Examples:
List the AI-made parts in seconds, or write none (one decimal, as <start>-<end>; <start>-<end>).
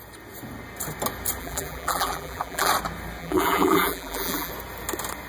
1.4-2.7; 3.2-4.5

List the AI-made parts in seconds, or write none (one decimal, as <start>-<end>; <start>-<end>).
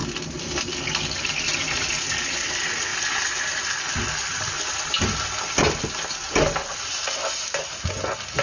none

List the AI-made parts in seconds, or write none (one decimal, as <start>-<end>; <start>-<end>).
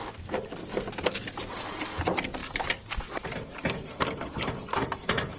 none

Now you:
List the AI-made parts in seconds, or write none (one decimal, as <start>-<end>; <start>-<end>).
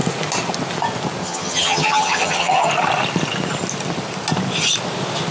1.2-2.7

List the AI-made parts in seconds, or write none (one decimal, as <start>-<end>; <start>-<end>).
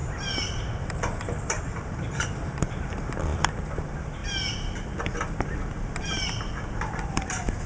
0.0-4.2; 5.0-7.7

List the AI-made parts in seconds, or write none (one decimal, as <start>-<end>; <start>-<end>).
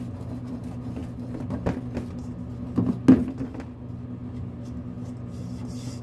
none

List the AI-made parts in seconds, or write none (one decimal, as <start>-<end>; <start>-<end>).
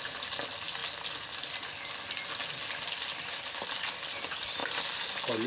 none